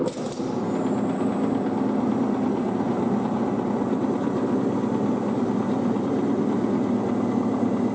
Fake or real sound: real